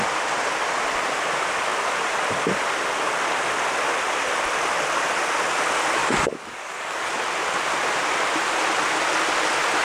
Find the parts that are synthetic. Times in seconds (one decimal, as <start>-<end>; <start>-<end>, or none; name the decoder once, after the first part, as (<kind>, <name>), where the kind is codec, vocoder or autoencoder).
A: 6.0-7.1 (codec, DAC)